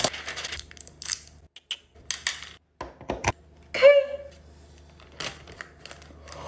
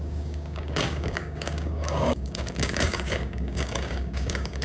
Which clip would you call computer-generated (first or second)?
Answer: second